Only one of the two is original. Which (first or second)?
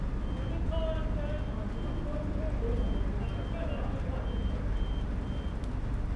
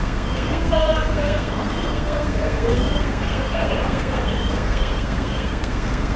first